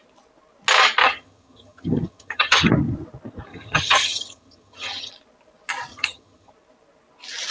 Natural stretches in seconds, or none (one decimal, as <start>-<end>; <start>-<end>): 0.0-1.0; 2.7-3.5; 5.1-5.9; 6.5-7.5